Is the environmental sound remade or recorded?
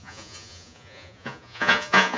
remade